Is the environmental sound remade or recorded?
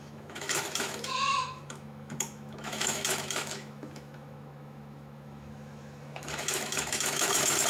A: remade